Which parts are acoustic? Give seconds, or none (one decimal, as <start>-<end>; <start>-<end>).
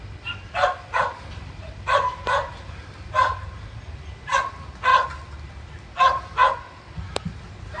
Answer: 0.0-7.8